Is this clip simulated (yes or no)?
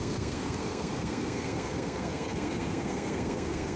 yes